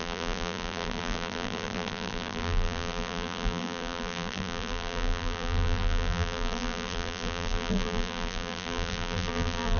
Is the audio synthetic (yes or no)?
yes